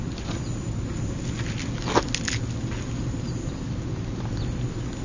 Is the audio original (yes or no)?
yes